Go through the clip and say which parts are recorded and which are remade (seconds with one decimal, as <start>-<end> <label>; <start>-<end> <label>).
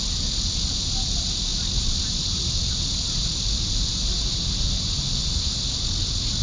0.0-6.4 recorded